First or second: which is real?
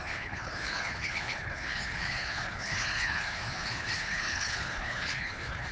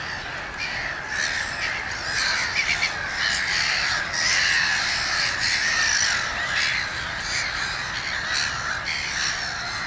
second